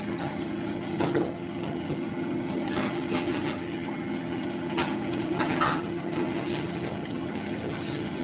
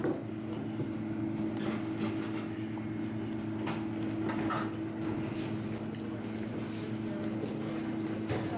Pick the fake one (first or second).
first